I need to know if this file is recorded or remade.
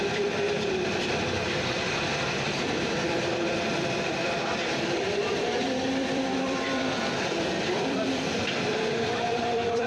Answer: remade